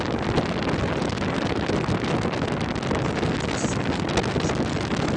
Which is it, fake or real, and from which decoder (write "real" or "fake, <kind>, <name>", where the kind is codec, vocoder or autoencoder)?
real